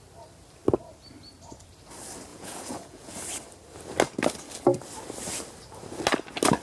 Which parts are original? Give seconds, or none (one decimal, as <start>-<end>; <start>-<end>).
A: 0.0-2.3; 3.1-6.6